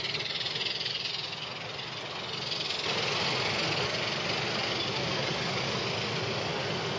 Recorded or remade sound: recorded